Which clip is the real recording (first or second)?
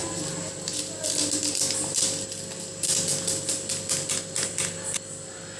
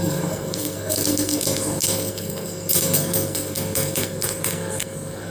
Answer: first